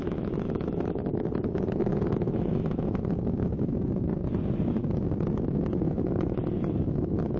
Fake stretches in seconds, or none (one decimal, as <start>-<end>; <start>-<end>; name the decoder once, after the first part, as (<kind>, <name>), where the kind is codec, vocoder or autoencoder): 0.0-4.1 (autoencoder, DAC-VAE); 6.9-7.4